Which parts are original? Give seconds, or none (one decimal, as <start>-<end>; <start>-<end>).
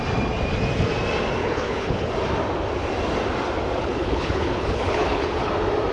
0.0-1.4; 2.1-3.8; 5.5-5.9